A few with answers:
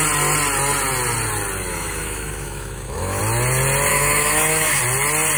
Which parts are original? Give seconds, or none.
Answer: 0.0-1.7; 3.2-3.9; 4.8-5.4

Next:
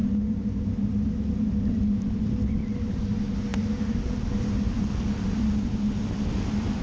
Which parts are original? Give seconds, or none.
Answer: 0.0-6.8

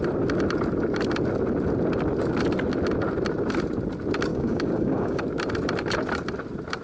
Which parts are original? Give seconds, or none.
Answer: 0.0-4.3; 5.2-6.8

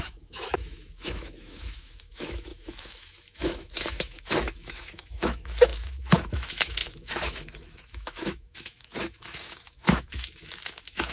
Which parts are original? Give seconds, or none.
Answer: none

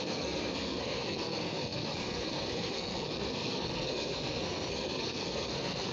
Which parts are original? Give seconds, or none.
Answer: none

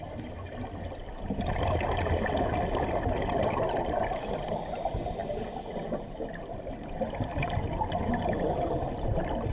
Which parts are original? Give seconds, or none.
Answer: 0.0-9.5